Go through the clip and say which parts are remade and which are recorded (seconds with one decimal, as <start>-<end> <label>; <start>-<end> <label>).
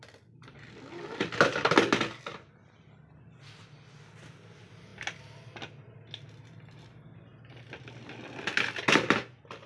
0.0-9.7 recorded